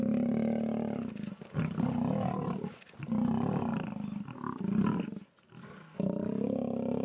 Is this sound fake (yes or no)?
no